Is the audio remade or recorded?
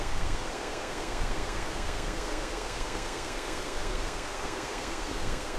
remade